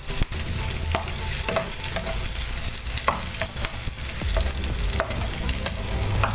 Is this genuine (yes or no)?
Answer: yes